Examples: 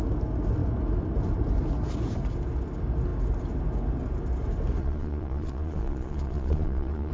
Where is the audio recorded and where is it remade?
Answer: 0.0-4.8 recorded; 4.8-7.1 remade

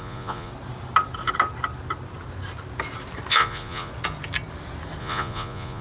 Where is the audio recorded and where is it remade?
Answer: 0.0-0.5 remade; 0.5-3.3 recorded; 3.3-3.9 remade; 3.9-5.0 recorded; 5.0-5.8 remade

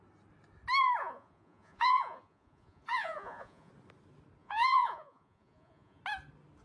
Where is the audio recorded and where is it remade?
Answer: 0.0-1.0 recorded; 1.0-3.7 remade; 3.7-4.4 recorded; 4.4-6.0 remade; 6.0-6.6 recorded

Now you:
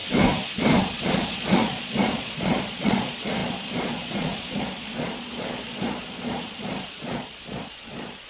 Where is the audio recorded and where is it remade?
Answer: 0.0-0.8 recorded; 0.8-8.3 remade

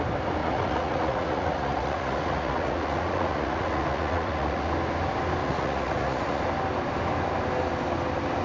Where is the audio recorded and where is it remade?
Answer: 0.0-0.4 recorded; 0.4-4.7 remade; 4.7-5.4 recorded; 5.4-6.4 remade; 6.4-8.4 recorded